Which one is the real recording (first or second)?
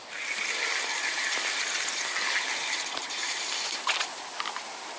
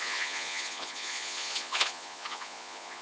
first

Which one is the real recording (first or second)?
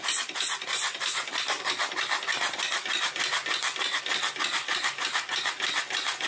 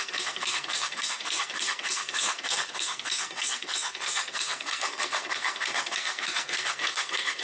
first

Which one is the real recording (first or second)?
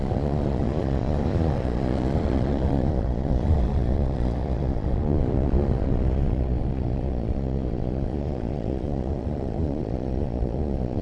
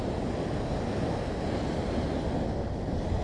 second